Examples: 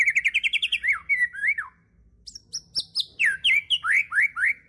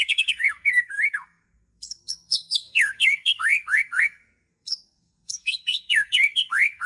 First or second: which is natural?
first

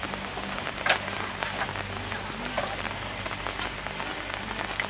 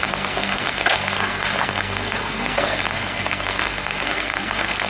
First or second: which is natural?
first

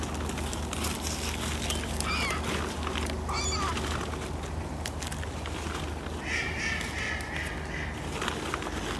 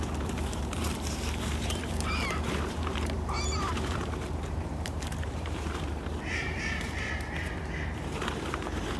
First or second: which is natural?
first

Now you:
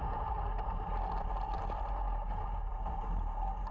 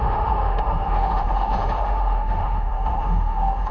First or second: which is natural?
first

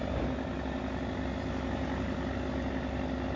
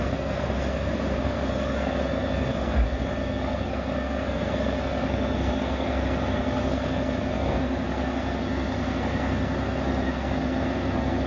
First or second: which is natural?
first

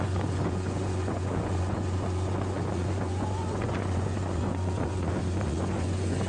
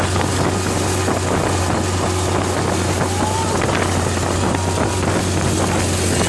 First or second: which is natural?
second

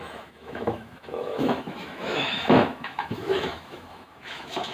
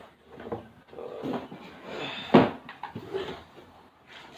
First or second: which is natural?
second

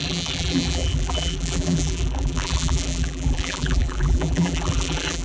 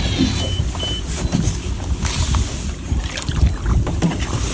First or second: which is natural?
second